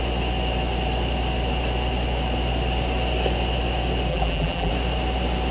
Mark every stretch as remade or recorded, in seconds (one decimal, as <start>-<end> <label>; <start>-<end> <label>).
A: 0.0-4.1 recorded; 4.1-4.7 remade; 4.7-5.5 recorded